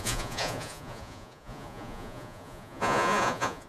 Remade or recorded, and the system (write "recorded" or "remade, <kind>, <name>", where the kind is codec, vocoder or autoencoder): remade, vocoder, Vocos